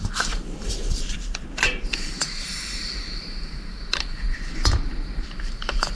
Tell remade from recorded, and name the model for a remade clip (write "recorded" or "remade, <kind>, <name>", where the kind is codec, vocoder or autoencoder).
remade, vocoder, BigVGAN v2